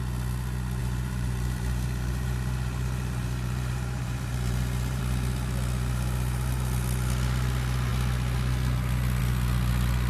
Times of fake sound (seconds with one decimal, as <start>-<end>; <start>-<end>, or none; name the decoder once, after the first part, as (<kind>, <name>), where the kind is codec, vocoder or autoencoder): 0.8-5.0 (vocoder, BigVGAN v2)